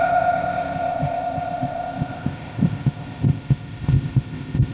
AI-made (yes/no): yes